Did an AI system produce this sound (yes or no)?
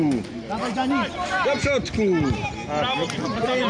no